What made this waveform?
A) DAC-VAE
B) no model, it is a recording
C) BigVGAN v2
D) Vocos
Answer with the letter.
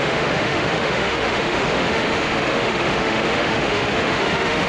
A